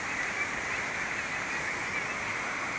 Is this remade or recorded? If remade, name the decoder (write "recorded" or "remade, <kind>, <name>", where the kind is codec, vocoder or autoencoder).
recorded